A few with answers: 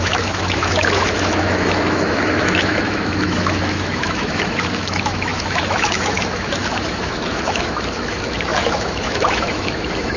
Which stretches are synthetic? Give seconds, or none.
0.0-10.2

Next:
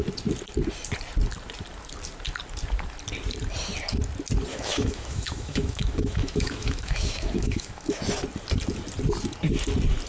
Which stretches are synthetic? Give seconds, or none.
4.5-8.0

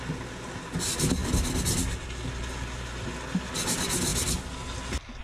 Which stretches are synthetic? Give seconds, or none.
none